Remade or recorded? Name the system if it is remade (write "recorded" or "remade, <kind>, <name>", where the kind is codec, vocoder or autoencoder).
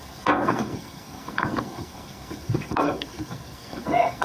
remade, codec, SNAC